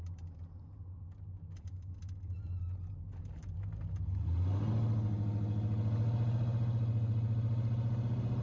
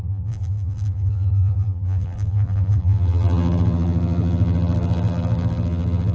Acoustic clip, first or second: first